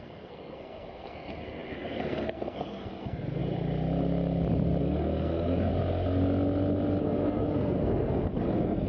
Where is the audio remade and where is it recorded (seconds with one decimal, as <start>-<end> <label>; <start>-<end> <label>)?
0.0-3.4 remade; 3.4-4.8 recorded; 4.8-5.7 remade; 5.7-7.0 recorded; 7.0-8.9 remade